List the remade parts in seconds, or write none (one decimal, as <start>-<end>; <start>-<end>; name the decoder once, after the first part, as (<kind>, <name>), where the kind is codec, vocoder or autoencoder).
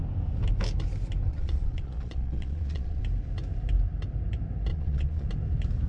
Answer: 1.3-3.0 (vocoder, Vocos); 4.7-5.3